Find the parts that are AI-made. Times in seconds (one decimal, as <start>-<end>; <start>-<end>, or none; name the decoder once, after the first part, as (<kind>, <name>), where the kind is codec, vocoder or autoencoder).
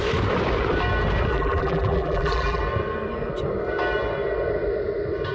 1.3-2.6 (vocoder, BigVGAN v2)